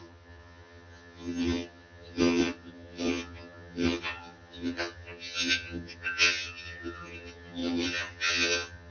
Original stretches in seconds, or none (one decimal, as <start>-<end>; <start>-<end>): none